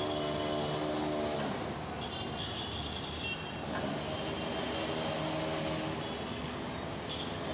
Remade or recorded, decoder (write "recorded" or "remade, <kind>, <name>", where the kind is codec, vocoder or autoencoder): recorded